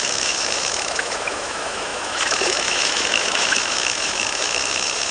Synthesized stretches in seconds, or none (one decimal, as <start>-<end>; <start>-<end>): 0.0-5.1